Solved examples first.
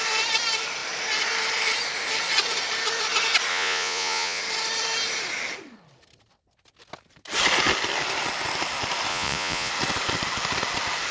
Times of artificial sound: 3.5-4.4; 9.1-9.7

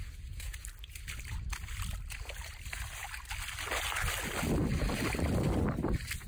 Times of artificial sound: 0.0-3.0; 4.9-6.3

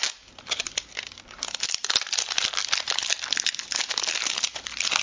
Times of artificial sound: none

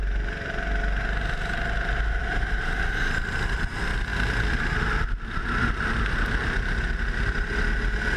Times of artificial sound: 2.2-2.8